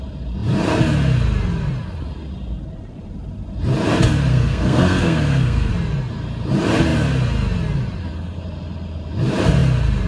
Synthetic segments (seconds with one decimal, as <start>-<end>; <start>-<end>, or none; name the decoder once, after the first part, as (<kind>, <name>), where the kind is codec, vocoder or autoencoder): 4.3-5.7 (codec, SNAC)

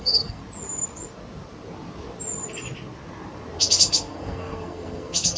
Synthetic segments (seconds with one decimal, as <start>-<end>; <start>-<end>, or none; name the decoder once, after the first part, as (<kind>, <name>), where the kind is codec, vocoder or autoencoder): 0.0-0.4 (codec, SNAC); 3.6-5.4

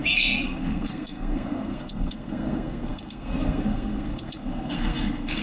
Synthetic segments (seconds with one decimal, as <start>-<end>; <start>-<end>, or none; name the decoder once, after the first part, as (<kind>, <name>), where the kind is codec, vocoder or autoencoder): 0.0-5.4 (codec, SNAC)

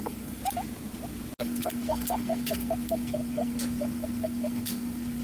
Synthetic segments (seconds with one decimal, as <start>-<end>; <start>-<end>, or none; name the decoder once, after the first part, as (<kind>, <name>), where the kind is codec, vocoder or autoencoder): 0.0-0.4 (codec, SNAC); 1.4-5.2

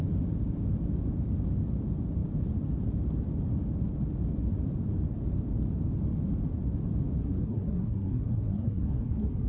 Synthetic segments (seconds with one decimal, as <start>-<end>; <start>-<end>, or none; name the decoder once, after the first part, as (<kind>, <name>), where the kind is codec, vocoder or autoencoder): 7.2-9.5 (codec, SNAC)